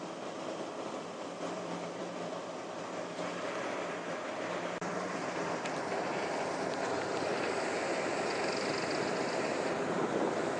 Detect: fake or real fake